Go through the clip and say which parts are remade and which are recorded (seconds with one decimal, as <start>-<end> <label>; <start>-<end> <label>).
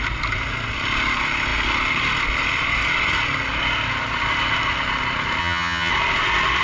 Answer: 0.0-5.4 recorded; 5.4-5.9 remade; 5.9-6.6 recorded